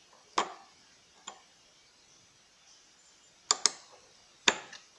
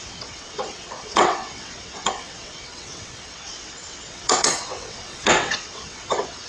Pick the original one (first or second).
first